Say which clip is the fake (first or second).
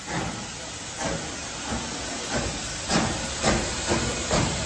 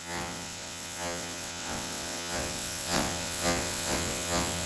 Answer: second